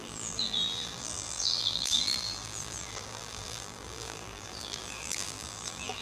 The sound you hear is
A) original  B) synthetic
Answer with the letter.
B